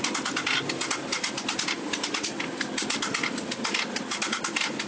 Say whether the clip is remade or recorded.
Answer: recorded